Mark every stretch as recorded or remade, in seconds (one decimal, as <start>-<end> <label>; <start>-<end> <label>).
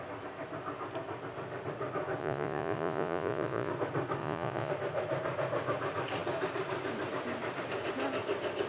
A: 0.0-2.2 recorded; 2.2-3.7 remade; 3.7-4.2 recorded; 4.2-4.7 remade; 4.7-8.7 recorded